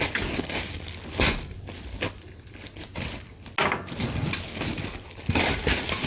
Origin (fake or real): real